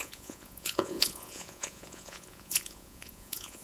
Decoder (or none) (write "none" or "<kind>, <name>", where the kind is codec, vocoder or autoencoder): vocoder, Vocos